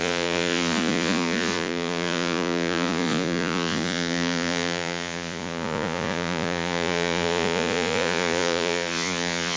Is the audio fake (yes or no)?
yes